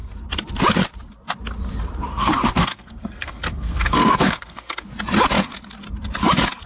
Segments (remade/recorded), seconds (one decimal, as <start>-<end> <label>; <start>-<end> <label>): 0.0-2.1 recorded; 2.1-4.8 remade; 4.8-6.7 recorded